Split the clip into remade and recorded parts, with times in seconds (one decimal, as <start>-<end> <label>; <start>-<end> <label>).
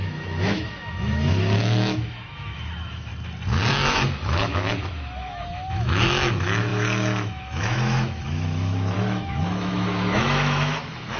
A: 0.0-3.1 remade; 3.1-3.7 recorded; 3.7-11.2 remade